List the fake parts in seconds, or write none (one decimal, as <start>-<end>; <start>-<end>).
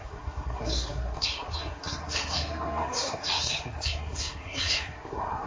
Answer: 0.0-5.5